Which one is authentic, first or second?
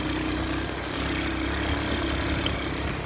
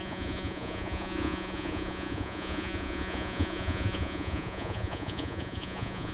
first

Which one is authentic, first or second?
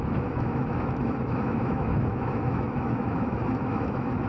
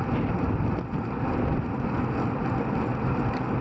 second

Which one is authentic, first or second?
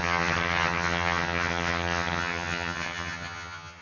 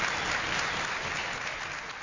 second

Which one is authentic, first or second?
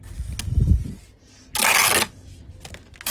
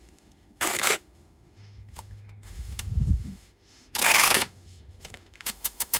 first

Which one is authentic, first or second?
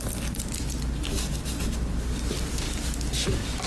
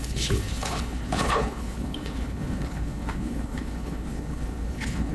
first